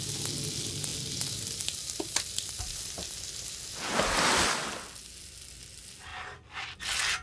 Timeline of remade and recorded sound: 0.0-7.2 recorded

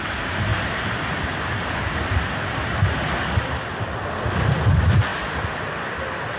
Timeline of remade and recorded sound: 0.0-6.4 recorded

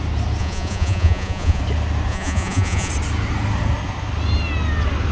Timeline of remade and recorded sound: 0.0-0.4 recorded; 0.4-1.6 remade; 1.6-2.1 recorded; 2.1-2.9 remade; 2.9-5.1 recorded